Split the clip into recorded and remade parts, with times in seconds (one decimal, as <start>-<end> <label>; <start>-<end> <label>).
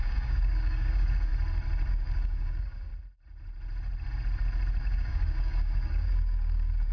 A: 0.0-1.3 remade; 1.3-1.9 recorded; 1.9-2.9 remade; 2.9-4.8 recorded; 4.8-6.9 remade